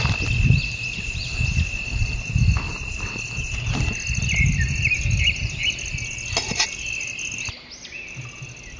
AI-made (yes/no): no